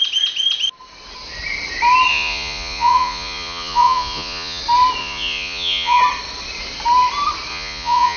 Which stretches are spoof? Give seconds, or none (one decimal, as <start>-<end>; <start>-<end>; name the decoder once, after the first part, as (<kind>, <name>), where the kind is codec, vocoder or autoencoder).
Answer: 2.1-4.6 (vocoder, Vocos); 5.0-6.0; 7.5-8.2